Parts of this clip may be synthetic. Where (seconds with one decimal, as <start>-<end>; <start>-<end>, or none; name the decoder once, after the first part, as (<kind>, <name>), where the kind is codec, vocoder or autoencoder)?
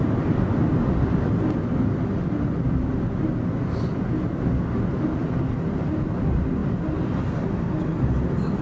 none